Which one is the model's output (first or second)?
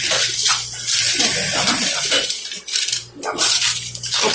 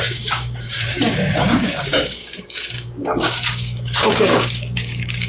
second